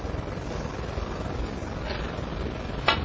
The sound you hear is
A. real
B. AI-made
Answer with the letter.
A